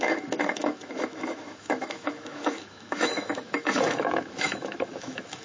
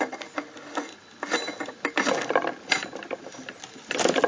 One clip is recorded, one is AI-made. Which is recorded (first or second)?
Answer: second